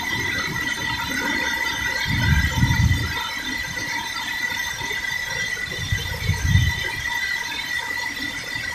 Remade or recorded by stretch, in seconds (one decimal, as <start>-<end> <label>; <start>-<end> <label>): 0.0-6.0 remade; 6.0-6.5 recorded; 6.5-8.7 remade